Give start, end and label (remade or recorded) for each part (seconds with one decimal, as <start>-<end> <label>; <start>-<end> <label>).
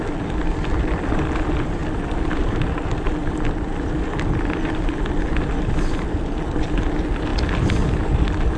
0.0-8.6 recorded